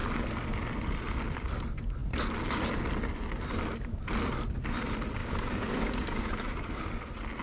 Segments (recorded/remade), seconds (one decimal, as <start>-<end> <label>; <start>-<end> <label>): 0.0-5.2 recorded; 5.2-6.8 remade; 6.8-7.4 recorded